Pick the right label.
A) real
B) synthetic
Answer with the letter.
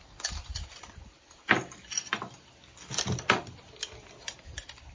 A